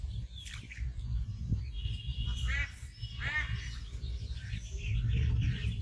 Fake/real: real